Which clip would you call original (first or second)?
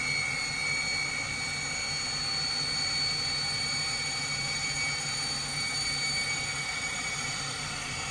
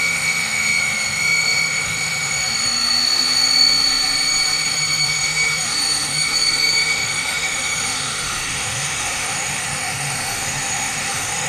first